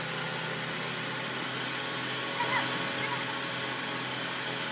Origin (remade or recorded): recorded